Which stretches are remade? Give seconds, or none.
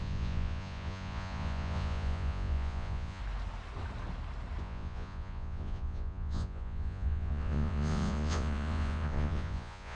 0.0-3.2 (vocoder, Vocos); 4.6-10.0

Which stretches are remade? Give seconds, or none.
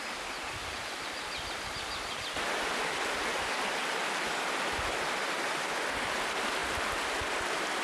none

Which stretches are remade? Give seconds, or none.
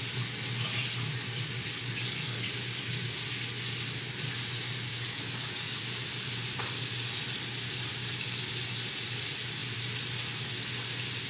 1.6-2.9 (codec, DAC); 4.9-5.8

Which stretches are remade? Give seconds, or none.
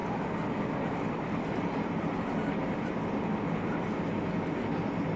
none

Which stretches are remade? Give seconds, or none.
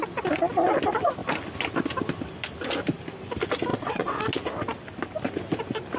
3.7-4.2 (vocoder, WaveNeXt)